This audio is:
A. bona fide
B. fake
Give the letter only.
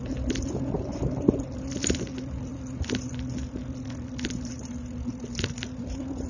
A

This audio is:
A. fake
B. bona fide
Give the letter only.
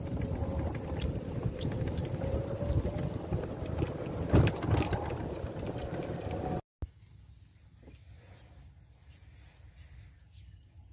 B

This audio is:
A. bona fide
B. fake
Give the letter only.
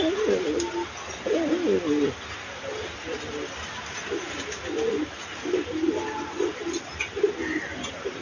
A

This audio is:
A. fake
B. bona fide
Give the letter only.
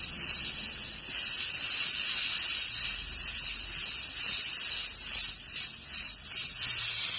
B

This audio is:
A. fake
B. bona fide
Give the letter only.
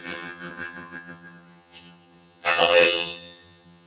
A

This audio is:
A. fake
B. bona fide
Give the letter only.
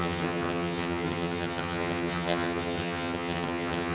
A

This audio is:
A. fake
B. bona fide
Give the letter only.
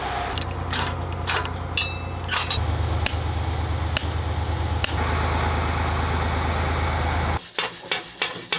B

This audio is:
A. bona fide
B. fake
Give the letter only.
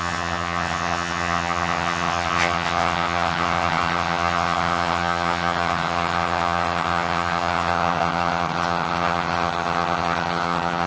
B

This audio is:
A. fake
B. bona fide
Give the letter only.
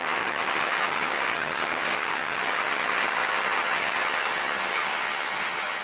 A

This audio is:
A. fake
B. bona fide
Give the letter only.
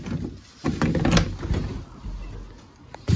B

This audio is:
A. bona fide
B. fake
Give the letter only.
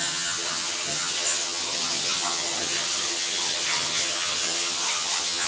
B